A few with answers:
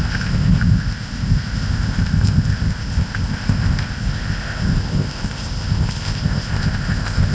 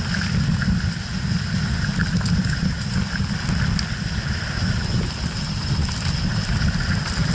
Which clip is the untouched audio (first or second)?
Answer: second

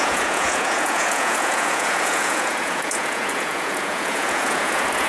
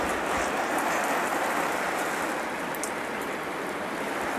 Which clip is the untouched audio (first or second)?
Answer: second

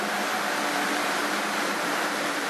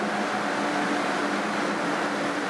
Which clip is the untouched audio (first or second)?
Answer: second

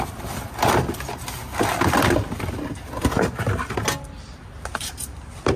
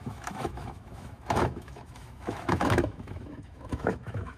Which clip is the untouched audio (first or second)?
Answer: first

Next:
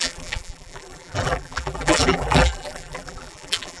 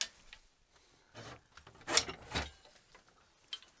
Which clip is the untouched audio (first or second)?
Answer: second